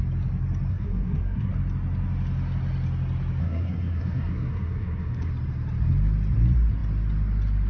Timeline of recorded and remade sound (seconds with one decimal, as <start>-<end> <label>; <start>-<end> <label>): 0.0-0.7 recorded; 0.7-1.5 remade; 1.5-3.4 recorded; 3.4-5.3 remade; 5.3-7.7 recorded